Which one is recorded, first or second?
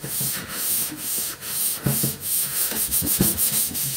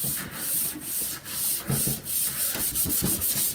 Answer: second